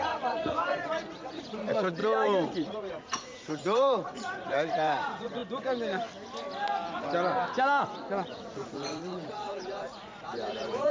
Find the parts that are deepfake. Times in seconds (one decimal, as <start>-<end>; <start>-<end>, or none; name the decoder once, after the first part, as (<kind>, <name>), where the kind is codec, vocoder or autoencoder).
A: 0.0-5.4 (vocoder, Vocos); 7.8-10.9